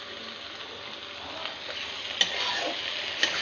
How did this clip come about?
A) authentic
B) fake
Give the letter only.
A